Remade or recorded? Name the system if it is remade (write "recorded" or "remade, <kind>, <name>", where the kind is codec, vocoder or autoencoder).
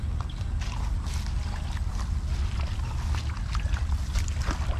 recorded